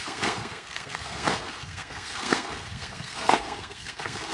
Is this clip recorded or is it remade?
remade